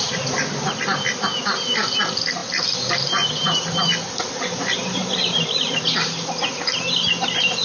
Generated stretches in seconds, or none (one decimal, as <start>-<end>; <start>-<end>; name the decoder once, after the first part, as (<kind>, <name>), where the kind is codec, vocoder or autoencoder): none

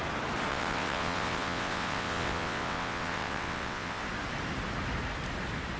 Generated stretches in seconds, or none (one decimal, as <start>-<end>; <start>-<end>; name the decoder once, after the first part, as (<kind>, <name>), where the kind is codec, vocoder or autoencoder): 0.5-4.0 (vocoder, WaveNeXt)

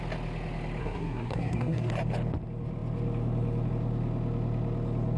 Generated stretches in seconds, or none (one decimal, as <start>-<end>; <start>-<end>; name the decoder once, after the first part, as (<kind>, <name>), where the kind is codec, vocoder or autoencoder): 0.8-1.9 (codec, SNAC)

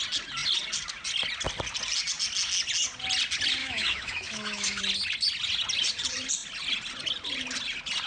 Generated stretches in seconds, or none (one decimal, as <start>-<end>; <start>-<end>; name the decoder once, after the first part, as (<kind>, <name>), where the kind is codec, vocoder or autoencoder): 3.6-4.8 (autoencoder, DAC-VAE)

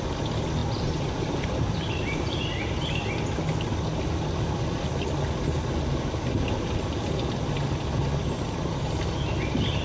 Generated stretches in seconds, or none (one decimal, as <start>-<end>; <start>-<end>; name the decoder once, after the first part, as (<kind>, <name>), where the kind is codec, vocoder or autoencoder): none

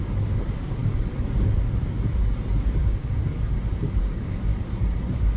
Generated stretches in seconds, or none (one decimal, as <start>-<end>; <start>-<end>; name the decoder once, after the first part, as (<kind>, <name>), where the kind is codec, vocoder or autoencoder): 0.0-0.8 (codec, DAC); 2.8-3.2; 4.0-4.5